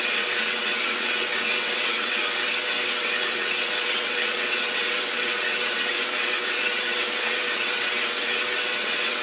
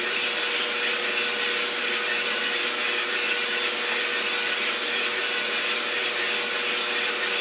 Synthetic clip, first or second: first